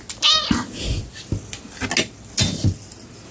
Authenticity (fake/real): real